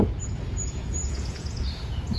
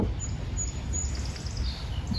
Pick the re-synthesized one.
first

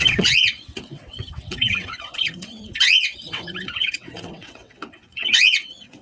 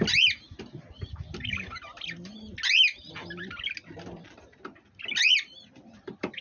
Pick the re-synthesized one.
first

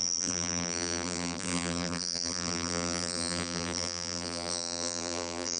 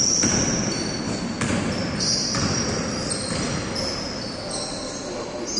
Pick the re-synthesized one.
first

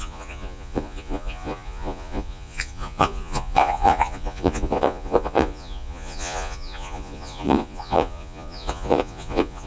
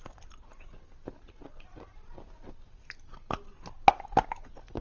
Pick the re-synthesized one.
first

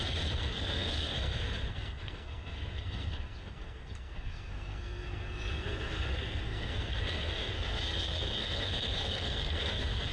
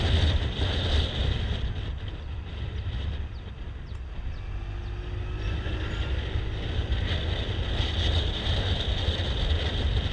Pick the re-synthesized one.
first